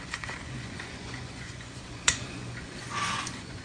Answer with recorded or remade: remade